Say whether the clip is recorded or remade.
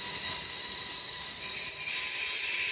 recorded